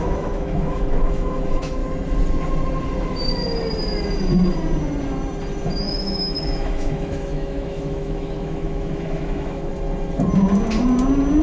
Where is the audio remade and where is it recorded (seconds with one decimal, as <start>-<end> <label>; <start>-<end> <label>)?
0.0-1.8 remade; 1.8-5.8 recorded; 5.8-9.7 remade; 9.7-11.4 recorded